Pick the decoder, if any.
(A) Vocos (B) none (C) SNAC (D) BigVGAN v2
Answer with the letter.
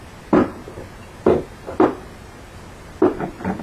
B